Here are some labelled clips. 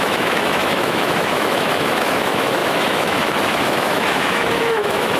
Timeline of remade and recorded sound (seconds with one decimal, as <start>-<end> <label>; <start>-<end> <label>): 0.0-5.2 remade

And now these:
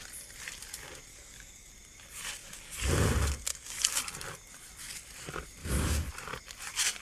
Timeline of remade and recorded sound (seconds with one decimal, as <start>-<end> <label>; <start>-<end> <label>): 0.0-1.1 recorded; 1.1-1.7 remade; 1.7-2.4 recorded; 2.4-2.9 remade; 2.9-3.5 recorded; 3.5-4.0 remade; 4.0-5.6 recorded; 5.6-6.1 remade; 6.1-7.0 recorded

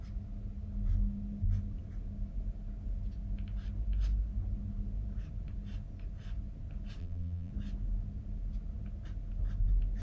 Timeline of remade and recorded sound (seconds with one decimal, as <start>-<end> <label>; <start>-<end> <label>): 0.0-7.0 recorded; 7.0-7.5 remade; 7.5-10.0 recorded